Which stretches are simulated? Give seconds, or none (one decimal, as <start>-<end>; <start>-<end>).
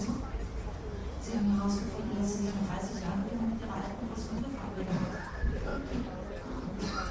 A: 0.0-1.0; 2.7-5.7